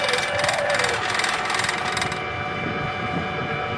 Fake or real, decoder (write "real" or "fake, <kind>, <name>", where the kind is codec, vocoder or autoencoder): real